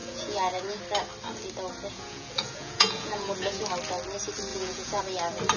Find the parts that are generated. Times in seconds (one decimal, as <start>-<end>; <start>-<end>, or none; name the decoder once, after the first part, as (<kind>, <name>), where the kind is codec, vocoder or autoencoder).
0.0-0.8 (vocoder, Vocos); 1.9-3.6; 4.5-5.0